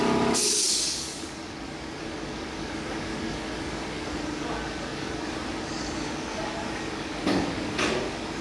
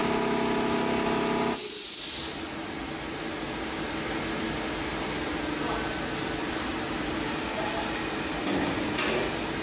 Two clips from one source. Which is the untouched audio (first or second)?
second